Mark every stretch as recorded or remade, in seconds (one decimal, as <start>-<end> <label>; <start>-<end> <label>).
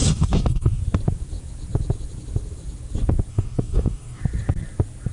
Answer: 0.0-0.8 remade; 0.8-3.3 recorded; 3.3-4.2 remade; 4.2-5.1 recorded